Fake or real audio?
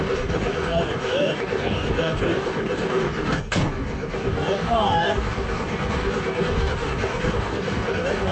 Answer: fake